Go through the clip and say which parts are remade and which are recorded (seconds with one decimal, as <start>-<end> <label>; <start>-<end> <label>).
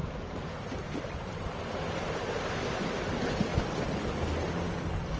0.0-3.0 remade; 3.0-5.2 recorded